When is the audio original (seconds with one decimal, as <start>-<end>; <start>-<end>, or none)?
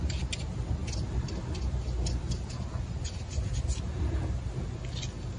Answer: 0.0-0.8; 2.7-5.4